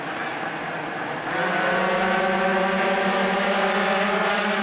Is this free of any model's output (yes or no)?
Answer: yes